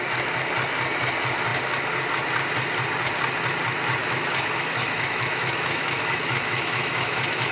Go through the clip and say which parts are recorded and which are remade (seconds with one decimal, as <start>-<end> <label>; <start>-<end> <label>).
0.0-4.0 recorded; 4.0-7.5 remade